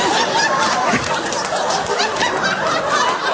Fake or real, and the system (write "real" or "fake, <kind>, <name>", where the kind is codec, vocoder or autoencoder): real